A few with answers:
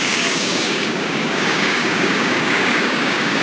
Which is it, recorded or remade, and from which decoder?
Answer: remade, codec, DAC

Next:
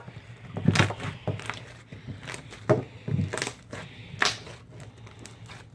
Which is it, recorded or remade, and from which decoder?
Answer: recorded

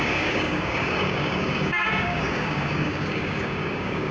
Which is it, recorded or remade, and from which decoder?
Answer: remade, codec, DAC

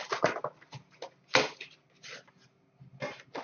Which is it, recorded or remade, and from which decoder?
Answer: recorded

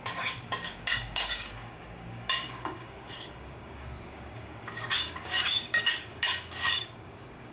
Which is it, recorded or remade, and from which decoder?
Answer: remade, codec, DAC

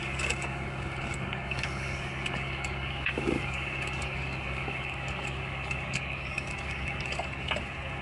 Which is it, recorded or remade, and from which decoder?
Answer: remade, codec, DAC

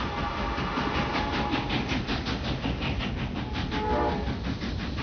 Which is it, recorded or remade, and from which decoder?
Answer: recorded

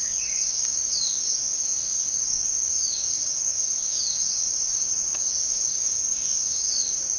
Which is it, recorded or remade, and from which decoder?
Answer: remade, codec, DAC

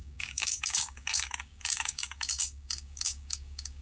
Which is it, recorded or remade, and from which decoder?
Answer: remade, codec, DAC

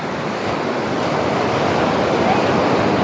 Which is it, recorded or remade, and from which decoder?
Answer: recorded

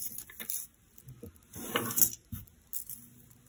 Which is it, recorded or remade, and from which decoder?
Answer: recorded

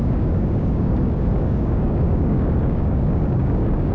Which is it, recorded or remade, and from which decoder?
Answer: remade, codec, DAC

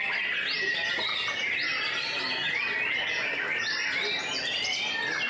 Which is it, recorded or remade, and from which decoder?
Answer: recorded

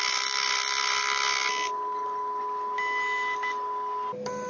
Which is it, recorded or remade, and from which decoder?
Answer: recorded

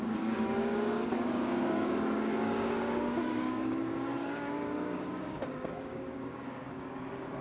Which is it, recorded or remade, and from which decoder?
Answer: remade, codec, DAC